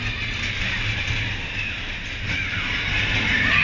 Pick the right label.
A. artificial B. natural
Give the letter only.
B